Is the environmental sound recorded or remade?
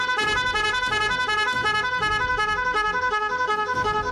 recorded